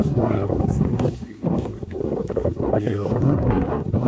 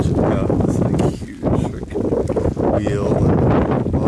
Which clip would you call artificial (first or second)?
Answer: first